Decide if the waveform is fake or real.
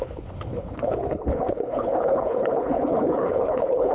fake